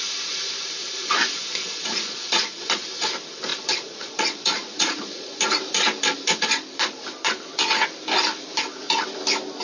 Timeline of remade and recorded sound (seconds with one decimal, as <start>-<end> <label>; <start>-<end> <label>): 0.0-0.8 recorded; 0.8-2.8 remade; 2.8-3.5 recorded; 3.5-5.3 remade; 5.3-9.6 recorded